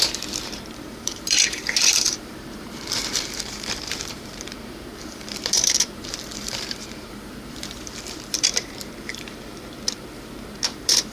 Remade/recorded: remade